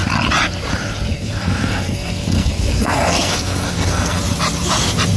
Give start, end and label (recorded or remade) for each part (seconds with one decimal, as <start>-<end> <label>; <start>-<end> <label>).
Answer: 0.0-1.1 recorded; 1.1-4.2 remade; 4.2-5.2 recorded